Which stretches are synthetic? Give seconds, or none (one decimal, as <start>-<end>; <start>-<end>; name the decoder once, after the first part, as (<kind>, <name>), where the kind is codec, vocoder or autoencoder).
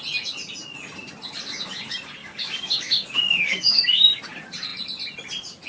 2.2-4.2 (codec, DAC)